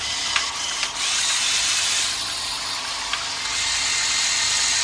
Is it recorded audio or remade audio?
recorded